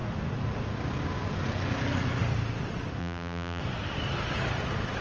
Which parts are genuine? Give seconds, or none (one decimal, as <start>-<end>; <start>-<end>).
0.0-3.0; 3.6-5.0

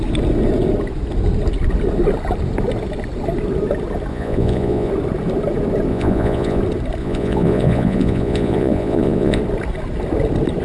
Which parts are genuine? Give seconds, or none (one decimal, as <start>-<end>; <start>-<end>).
0.0-4.1; 4.9-5.9; 6.6-7.0; 9.4-10.6

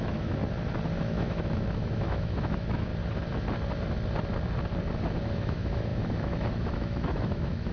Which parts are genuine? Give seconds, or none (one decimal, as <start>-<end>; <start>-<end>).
0.4-1.0; 2.9-5.3

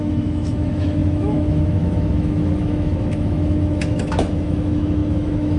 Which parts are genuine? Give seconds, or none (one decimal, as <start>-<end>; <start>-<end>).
none

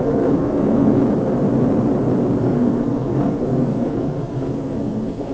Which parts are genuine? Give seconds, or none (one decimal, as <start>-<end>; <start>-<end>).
1.0-2.4

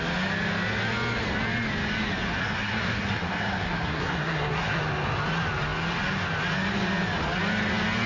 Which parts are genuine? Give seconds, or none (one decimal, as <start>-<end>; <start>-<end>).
0.0-2.4; 4.8-8.1